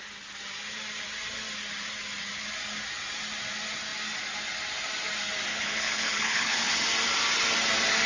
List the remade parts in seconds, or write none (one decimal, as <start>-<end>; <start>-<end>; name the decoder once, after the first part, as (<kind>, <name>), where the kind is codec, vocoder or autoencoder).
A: 5.5-6.7 (codec, HILCodec)

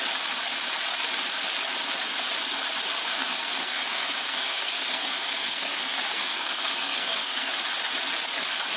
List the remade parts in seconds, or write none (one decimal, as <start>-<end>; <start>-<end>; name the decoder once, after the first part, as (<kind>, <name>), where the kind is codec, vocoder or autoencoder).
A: 3.0-7.5 (codec, SNAC)